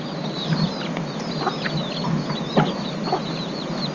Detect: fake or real real